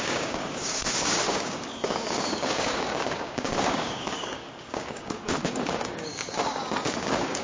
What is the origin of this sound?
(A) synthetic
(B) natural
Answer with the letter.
A